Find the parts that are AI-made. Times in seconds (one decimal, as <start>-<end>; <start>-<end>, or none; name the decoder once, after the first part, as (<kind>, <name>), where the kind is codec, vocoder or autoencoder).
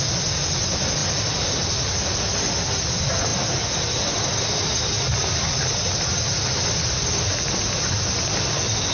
none